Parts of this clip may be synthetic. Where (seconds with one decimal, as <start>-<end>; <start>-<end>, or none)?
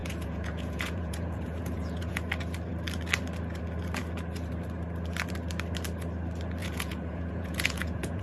0.0-2.2; 6.6-8.2